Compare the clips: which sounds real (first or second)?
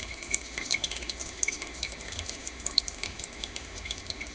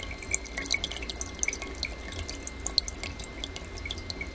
second